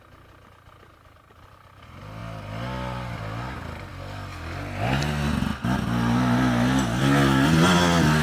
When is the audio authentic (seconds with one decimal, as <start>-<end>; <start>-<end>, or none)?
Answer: 0.0-8.2